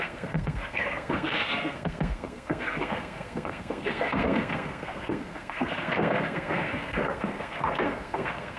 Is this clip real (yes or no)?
no